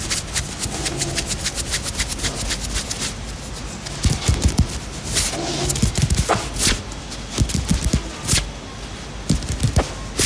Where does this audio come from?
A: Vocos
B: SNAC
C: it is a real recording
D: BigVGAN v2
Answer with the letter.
C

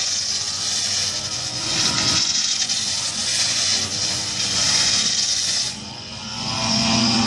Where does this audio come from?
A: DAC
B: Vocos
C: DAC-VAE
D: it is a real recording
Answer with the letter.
B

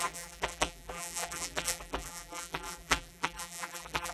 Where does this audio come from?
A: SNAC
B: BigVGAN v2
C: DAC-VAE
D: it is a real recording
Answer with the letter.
B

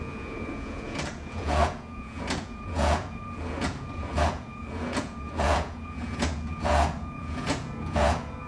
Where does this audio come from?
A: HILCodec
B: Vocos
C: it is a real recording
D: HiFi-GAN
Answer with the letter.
B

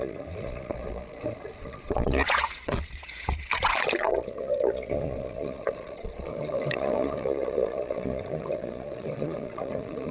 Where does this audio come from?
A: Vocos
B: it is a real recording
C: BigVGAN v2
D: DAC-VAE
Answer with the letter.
A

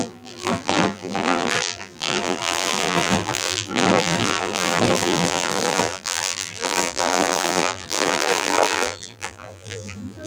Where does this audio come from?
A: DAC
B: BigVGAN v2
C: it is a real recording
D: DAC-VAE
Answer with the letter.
B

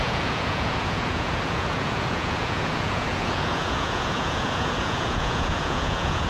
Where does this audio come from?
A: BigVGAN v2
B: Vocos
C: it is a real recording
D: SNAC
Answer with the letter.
B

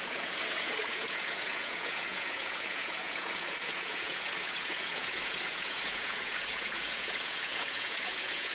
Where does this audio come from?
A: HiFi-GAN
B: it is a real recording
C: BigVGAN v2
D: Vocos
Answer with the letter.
D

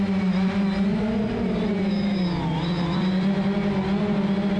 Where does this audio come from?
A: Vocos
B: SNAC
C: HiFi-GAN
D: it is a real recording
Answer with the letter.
D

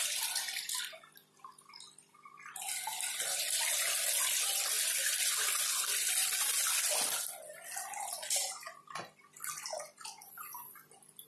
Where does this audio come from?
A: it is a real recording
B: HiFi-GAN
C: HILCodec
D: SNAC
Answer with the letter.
A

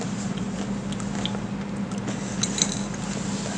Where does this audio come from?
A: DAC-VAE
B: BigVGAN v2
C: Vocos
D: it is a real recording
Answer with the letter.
D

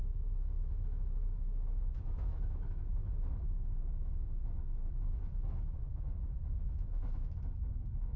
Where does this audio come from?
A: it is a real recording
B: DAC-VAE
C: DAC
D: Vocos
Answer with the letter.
B